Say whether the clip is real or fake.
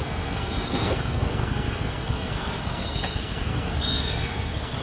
fake